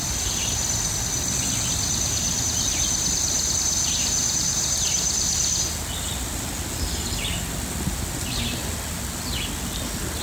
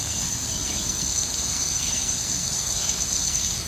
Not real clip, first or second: second